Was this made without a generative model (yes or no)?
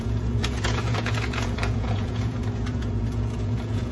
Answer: no